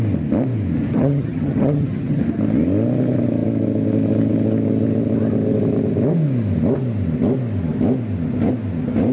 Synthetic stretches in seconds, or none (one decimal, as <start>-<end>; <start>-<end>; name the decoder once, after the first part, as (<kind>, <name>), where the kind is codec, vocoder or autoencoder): 0.9-2.2 (vocoder, HiFi-GAN)